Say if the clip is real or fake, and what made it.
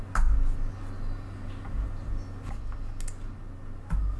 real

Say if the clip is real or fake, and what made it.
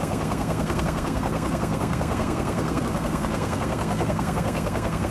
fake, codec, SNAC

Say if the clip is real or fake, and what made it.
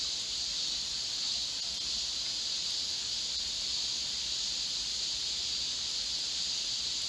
real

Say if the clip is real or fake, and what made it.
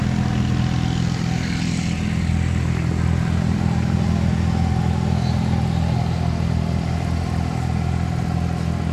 real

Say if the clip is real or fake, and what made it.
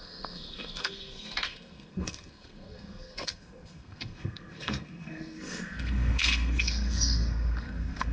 fake, codec, SNAC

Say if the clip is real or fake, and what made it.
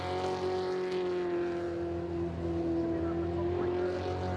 real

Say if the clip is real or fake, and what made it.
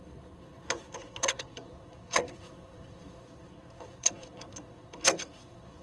fake, codec, SNAC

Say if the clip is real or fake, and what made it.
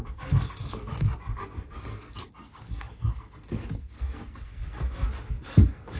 fake, codec, SNAC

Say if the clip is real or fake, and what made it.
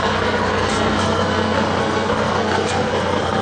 fake, codec, SNAC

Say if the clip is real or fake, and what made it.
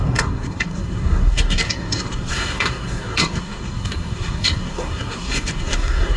fake, codec, SNAC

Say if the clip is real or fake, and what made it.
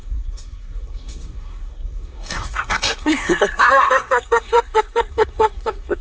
fake, codec, SNAC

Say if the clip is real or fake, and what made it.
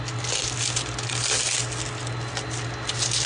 real